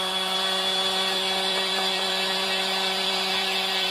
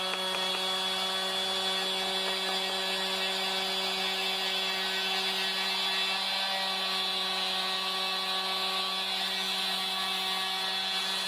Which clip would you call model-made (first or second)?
first